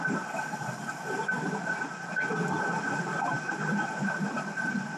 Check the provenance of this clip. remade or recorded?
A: recorded